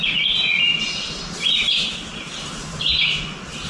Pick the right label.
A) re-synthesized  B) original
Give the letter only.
B